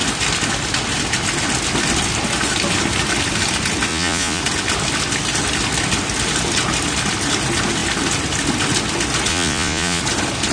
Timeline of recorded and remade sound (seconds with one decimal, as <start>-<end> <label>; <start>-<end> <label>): 0.0-3.9 recorded; 3.9-4.4 remade; 4.4-9.3 recorded; 9.3-10.0 remade; 10.0-10.5 recorded